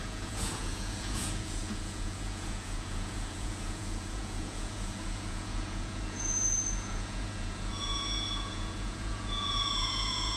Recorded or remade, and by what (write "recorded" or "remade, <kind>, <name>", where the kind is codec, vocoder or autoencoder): remade, vocoder, Vocos